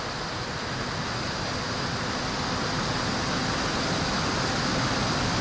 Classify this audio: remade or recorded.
recorded